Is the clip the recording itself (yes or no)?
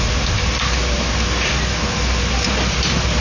yes